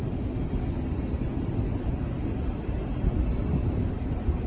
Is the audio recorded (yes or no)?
yes